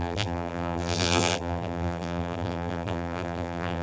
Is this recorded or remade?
remade